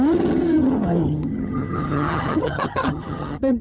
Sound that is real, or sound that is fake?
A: fake